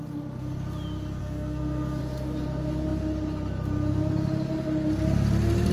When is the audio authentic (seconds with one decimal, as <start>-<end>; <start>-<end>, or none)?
0.0-1.2; 2.0-5.7